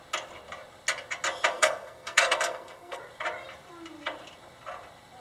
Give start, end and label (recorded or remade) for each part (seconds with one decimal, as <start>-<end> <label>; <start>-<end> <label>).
0.0-1.5 recorded; 1.5-3.0 remade; 3.0-5.2 recorded